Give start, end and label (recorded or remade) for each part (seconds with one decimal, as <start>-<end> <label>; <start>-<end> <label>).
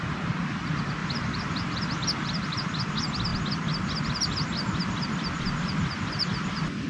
0.0-6.9 recorded